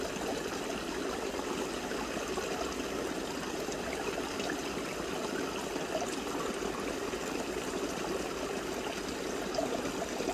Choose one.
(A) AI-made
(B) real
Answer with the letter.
B